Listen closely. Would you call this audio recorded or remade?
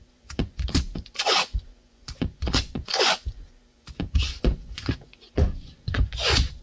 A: remade